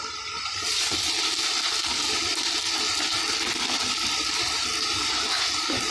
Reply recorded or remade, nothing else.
recorded